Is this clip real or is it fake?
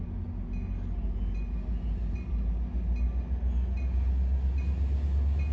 real